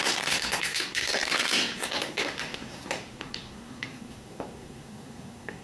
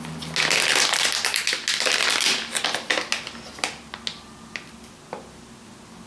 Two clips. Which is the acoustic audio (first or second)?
second